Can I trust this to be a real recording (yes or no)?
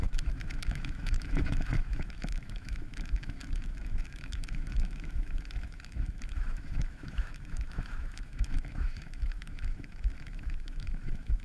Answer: no